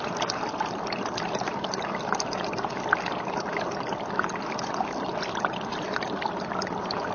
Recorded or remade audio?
recorded